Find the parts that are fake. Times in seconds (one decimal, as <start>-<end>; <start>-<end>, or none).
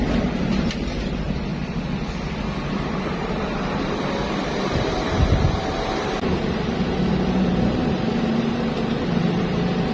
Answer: 0.0-1.5; 3.2-9.9